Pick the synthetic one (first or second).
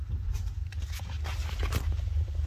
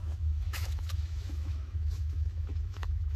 second